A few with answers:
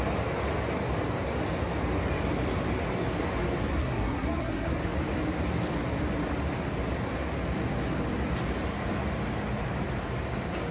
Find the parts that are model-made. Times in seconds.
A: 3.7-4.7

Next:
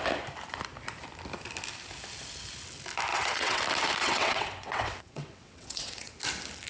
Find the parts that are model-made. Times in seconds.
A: 3.1-3.6; 4.0-6.1

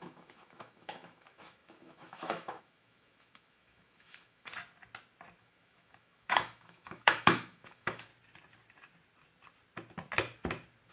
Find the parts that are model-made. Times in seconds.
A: 0.0-4.5; 5.4-8.1